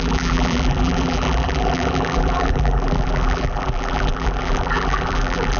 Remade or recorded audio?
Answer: remade